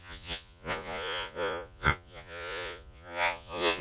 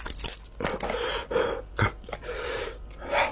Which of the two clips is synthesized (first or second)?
first